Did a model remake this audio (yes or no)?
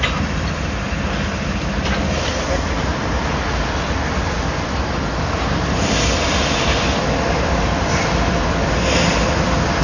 no